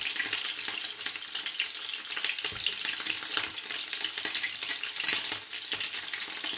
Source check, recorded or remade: recorded